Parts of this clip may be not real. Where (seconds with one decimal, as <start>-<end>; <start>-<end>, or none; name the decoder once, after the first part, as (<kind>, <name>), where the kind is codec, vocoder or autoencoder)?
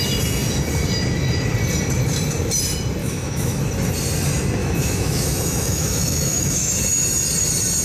3.0-3.6 (autoencoder, DAC-VAE); 4.6-6.7